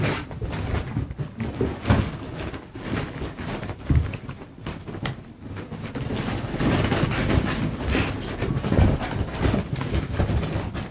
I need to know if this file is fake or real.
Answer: real